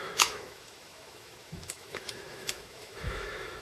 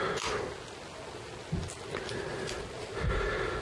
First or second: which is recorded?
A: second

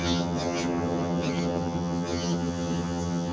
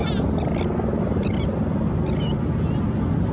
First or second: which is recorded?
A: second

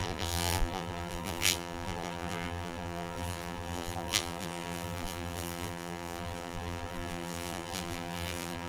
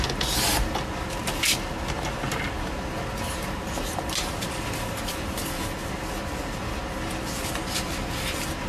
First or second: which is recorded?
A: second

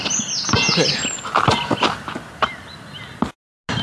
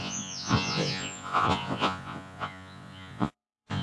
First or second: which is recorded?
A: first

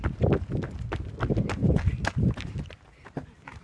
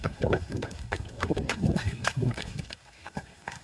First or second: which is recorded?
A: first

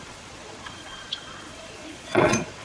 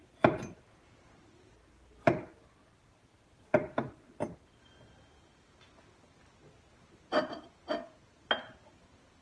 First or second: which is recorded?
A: second